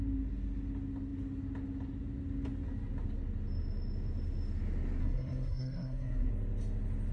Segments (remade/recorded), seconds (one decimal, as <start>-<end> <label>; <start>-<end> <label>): 0.0-5.0 recorded; 5.0-6.3 remade; 6.3-7.1 recorded